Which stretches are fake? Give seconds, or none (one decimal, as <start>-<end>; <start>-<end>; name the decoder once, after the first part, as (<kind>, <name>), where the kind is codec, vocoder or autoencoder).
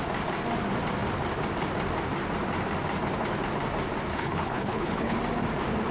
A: 4.1-5.2 (codec, HILCodec)